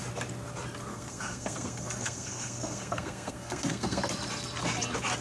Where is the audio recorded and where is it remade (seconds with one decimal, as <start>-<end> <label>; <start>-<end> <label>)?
0.0-0.9 recorded; 0.9-4.0 remade; 4.0-5.2 recorded